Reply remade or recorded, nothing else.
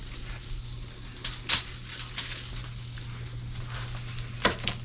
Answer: recorded